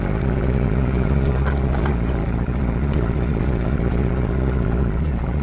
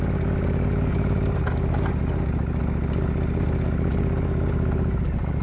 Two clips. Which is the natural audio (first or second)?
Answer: second